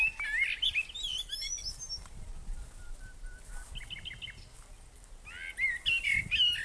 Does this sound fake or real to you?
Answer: real